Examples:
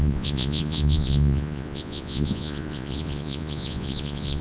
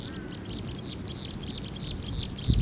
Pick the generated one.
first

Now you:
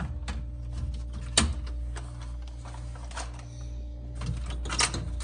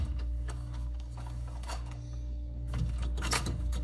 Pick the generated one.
second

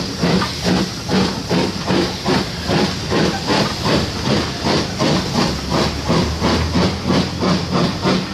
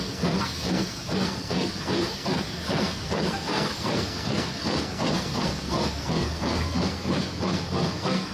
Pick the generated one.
second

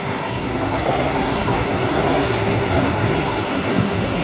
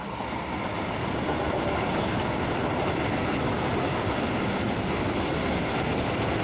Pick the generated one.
first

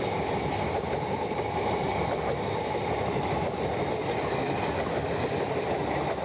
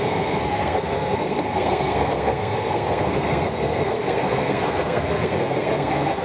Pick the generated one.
second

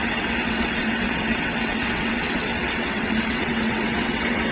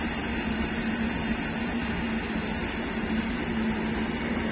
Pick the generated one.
first